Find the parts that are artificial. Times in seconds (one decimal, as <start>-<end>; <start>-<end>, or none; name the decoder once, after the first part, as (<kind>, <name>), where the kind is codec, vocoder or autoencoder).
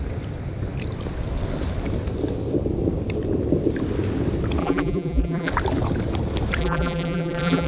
4.6-5.5 (vocoder, BigVGAN v2); 6.6-7.7